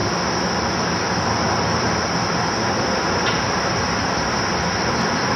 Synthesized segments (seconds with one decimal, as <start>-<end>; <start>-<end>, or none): none

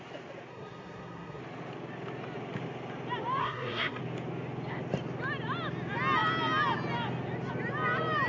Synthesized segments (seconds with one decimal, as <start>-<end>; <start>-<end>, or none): 0.5-1.4; 3.4-4.0

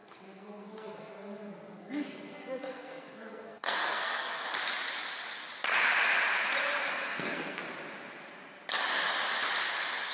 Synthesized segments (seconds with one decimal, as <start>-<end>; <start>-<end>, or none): 0.0-4.4; 6.9-7.6

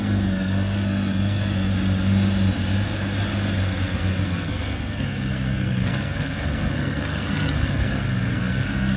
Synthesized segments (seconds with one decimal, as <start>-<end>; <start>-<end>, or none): 0.0-1.7; 3.6-9.0

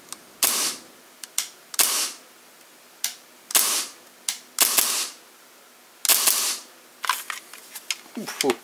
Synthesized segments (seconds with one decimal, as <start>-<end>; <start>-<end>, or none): none